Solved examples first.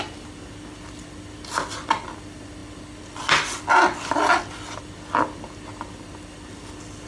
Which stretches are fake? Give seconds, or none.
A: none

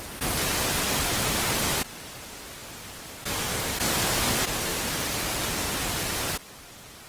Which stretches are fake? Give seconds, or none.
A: 4.7-5.4

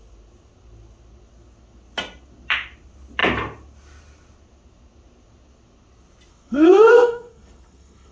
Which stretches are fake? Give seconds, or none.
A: 6.3-8.1

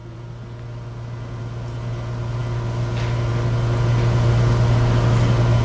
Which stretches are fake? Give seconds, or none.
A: none

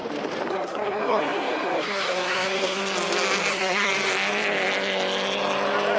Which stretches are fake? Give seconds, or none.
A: 0.5-2.8; 3.5-3.9

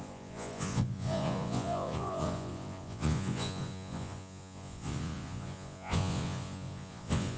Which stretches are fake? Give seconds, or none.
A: 0.0-7.4

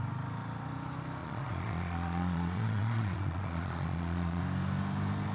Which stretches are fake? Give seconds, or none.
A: 1.2-4.4